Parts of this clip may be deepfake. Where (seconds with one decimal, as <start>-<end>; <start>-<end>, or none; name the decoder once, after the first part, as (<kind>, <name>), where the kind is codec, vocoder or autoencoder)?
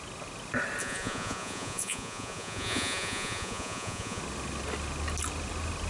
0.8-4.2 (vocoder, Vocos)